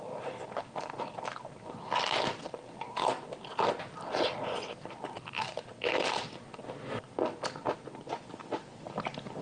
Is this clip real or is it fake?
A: real